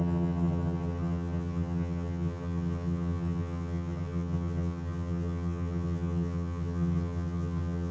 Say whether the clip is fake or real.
fake